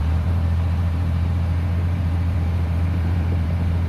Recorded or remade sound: remade